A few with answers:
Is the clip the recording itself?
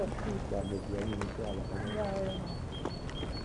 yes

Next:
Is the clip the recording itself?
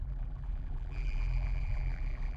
no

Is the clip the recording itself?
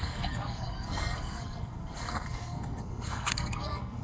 no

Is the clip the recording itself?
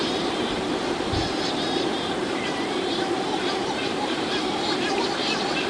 no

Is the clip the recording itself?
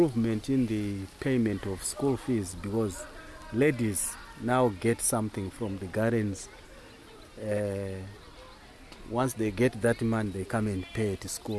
yes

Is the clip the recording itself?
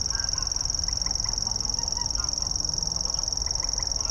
yes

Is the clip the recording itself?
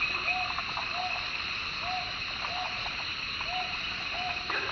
yes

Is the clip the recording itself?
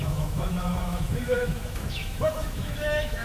no